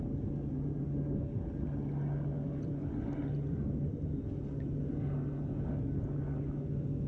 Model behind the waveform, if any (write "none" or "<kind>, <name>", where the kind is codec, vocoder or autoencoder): none